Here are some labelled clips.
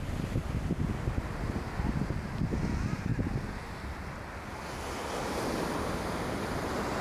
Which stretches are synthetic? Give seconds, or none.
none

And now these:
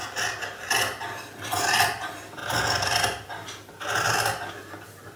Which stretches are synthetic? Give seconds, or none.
none

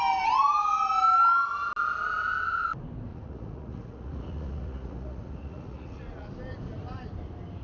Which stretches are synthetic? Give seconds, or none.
3.1-6.3 (vocoder, Vocos)

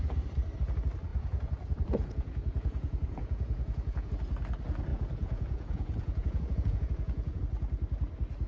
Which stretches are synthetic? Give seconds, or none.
1.1-4.1 (vocoder, Vocos); 4.9-7.4

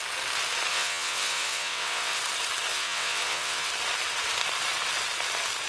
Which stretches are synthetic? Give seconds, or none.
0.7-2.2 (vocoder, WaveNeXt); 2.7-3.7

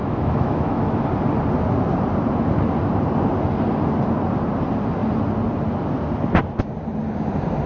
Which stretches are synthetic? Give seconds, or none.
0.0-1.0 (autoencoder, DAC-VAE)